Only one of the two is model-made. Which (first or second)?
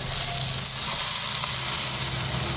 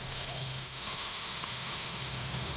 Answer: second